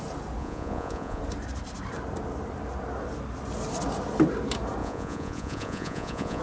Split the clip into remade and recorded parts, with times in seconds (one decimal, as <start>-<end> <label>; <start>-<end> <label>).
0.0-0.4 recorded; 0.4-1.2 remade; 1.2-4.8 recorded; 4.8-6.4 remade